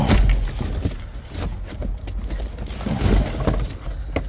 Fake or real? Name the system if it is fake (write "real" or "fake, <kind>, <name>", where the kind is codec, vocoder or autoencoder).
real